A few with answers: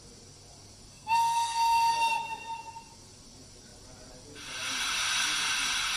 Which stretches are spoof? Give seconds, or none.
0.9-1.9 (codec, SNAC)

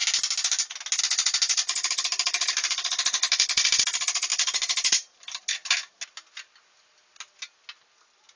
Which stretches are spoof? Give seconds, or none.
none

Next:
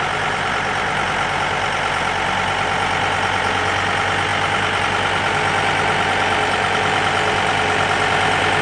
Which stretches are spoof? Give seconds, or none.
none